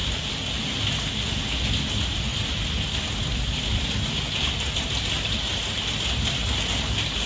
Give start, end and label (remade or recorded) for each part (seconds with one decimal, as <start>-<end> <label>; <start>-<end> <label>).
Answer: 0.0-7.3 recorded